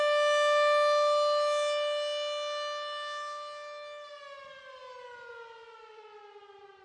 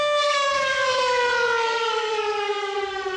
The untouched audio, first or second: first